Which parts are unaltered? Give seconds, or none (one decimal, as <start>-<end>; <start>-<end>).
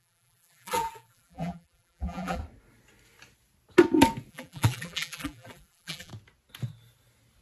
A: 2.4-4.3; 6.1-7.4